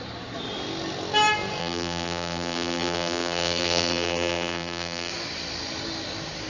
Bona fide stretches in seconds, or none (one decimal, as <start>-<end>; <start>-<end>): 0.0-1.6; 5.1-6.5

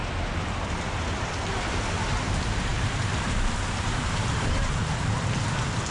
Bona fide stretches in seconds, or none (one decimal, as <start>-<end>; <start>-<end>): 0.0-2.7; 4.8-5.9